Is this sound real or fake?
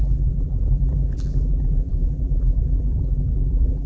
fake